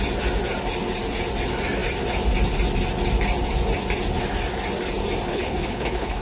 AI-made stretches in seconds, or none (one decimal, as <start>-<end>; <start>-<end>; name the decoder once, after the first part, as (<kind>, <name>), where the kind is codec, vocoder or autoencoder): 5.3-6.2 (codec, HILCodec)